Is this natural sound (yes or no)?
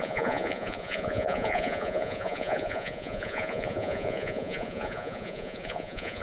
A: no